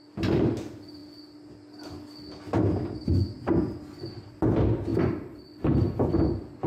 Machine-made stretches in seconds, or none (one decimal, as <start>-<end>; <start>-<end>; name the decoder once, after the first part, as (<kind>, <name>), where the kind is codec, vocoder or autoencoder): 4.9-6.1 (vocoder, BigVGAN v2)